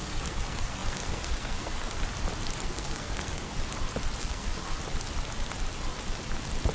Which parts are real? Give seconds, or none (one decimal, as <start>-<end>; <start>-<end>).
2.0-2.6; 3.5-4.2; 4.8-6.7